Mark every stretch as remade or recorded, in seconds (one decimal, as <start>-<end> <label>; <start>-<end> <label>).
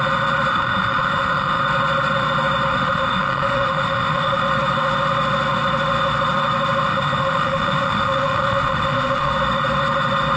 0.0-0.5 recorded; 0.5-1.6 remade; 1.6-2.7 recorded; 2.7-4.4 remade; 4.4-6.9 recorded; 6.9-9.3 remade; 9.3-10.4 recorded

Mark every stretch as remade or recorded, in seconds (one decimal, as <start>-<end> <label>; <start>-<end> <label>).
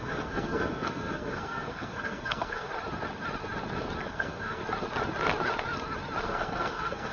0.0-2.7 remade; 2.7-4.1 recorded; 4.1-4.6 remade; 4.6-6.2 recorded; 6.2-7.1 remade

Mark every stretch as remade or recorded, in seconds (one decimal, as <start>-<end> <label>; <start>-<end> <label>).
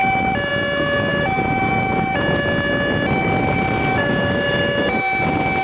0.0-1.1 recorded; 1.1-1.7 remade; 1.7-3.9 recorded; 3.9-5.0 remade; 5.0-5.6 recorded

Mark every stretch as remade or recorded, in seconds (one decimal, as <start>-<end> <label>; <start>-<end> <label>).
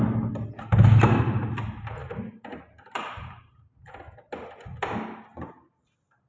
0.0-2.0 recorded; 2.0-3.5 remade; 3.5-6.3 recorded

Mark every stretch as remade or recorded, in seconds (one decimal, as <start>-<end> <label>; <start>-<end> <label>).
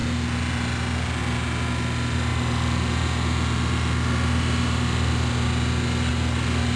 0.0-6.8 recorded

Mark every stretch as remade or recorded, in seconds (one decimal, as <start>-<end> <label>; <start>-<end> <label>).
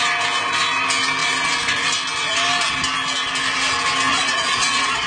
0.0-4.1 recorded; 4.1-5.1 remade